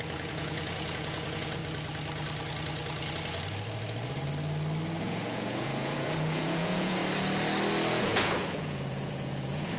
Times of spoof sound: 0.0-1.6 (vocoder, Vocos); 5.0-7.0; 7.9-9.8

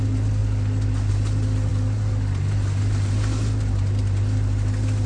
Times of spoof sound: none

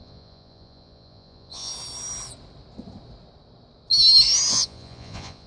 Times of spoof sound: 0.0-1.7 (vocoder, Vocos); 4.5-5.5

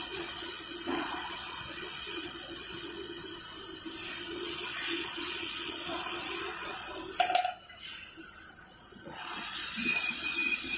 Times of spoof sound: 0.0-3.2 (vocoder, Vocos); 4.1-6.9; 8.6-10.8